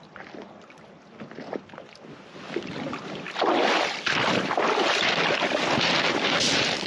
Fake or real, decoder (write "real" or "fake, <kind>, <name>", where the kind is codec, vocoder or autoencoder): real